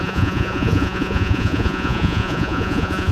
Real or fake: fake